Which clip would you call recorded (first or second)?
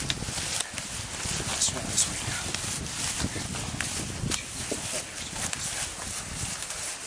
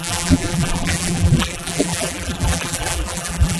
first